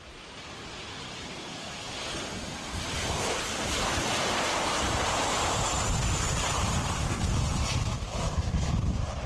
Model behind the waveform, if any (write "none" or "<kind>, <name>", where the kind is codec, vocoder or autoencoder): vocoder, BigVGAN v2